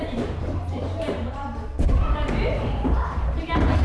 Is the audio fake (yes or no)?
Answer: yes